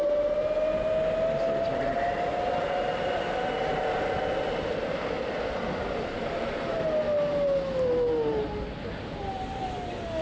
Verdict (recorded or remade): recorded